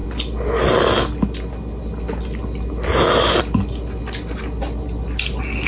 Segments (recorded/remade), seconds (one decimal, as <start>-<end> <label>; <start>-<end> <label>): 0.0-5.7 recorded